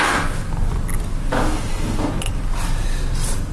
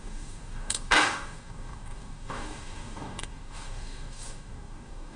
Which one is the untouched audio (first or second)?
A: first